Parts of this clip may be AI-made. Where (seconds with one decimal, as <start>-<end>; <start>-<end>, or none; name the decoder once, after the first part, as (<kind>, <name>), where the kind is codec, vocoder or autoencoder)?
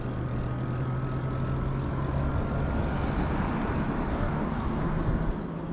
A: 4.1-4.8 (codec, DAC)